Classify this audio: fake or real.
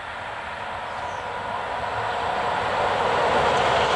real